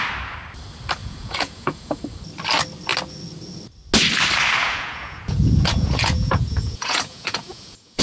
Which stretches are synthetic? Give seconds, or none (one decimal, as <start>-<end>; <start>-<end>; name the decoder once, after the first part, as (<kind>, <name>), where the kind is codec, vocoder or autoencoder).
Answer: 1.0-2.0 (vocoder, Vocos); 4.6-8.0